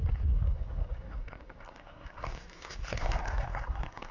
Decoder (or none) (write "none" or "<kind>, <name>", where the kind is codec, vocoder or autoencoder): codec, SNAC